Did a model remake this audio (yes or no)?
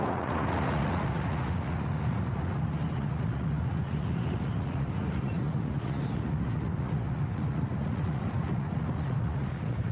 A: yes